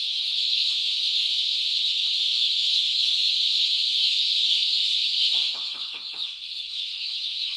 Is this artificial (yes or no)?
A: yes